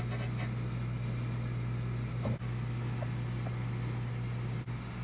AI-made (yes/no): no